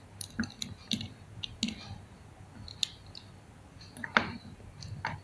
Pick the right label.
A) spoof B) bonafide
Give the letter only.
B